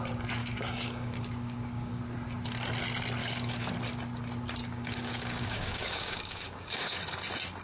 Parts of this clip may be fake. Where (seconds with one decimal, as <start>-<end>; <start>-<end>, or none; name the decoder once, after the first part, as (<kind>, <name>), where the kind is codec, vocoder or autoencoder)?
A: 0.4-2.0 (codec, DAC); 3.2-3.7; 4.6-7.0